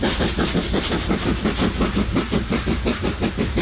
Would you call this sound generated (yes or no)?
no